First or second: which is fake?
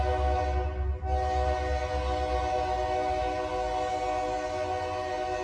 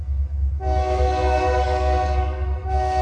second